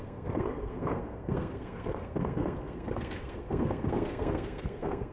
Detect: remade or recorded remade